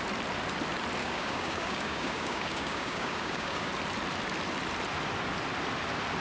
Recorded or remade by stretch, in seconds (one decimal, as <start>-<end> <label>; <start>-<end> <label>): 0.0-1.0 recorded; 1.0-3.7 remade; 3.7-6.2 recorded